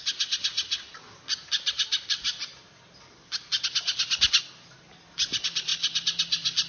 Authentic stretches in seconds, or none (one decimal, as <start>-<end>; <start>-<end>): 0.0-6.7